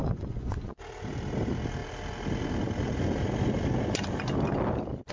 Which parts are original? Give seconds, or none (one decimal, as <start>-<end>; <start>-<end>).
0.8-5.1